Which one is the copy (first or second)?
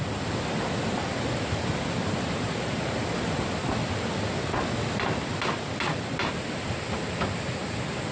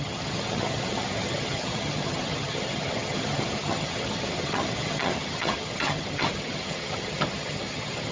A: second